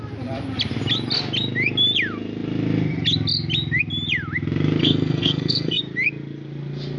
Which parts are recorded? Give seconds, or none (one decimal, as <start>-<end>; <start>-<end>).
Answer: 0.0-4.8; 5.8-7.0

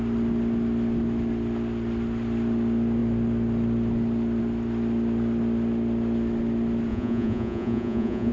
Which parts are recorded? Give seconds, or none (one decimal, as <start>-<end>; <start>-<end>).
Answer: 0.0-6.9

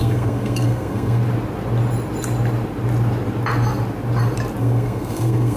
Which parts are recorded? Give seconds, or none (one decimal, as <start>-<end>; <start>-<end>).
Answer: 1.2-4.6